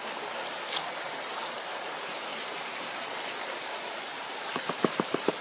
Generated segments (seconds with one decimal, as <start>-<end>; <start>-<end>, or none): 2.3-3.1; 4.1-5.4